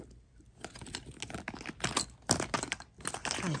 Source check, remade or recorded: recorded